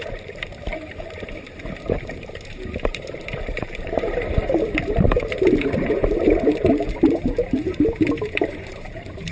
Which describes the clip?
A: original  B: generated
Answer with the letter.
B